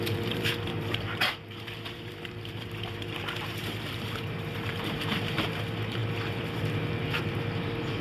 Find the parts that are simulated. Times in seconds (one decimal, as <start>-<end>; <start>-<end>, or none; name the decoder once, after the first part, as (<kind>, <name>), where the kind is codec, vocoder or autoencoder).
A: 0.0-8.0 (vocoder, BigVGAN v2)